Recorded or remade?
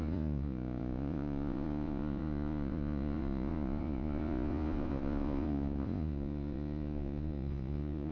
remade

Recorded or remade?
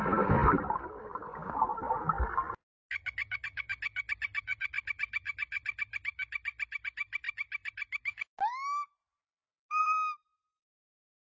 recorded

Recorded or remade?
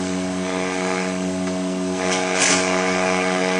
remade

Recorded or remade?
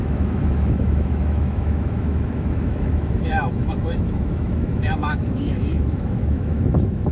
remade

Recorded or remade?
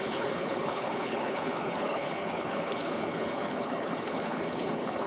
remade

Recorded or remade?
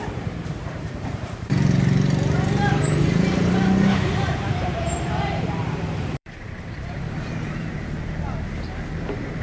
remade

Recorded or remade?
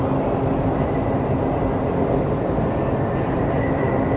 recorded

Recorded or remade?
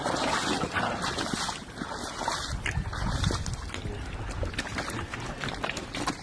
recorded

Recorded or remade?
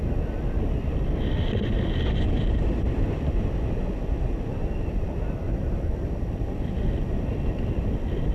recorded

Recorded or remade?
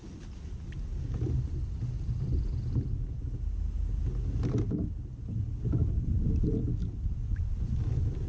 recorded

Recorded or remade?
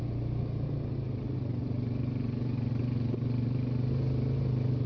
recorded